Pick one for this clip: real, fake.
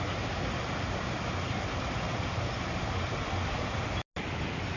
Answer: real